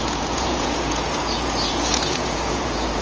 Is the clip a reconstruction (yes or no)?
yes